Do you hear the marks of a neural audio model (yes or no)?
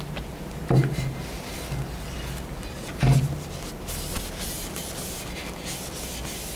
no